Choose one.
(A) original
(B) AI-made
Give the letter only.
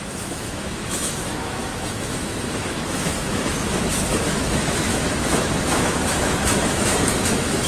B